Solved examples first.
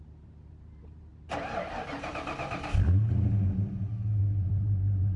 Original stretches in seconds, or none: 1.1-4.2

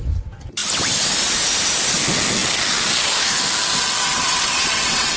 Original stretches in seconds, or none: 0.0-4.1